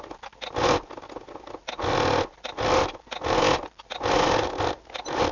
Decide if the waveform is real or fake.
real